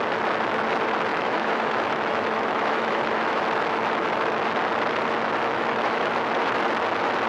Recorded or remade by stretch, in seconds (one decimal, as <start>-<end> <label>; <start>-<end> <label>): 0.0-1.1 recorded; 1.1-3.4 remade; 3.4-5.5 recorded; 5.5-6.1 remade; 6.1-7.3 recorded